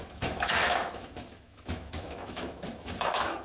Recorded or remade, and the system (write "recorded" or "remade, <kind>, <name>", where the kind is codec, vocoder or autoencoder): remade, autoencoder, DAC-VAE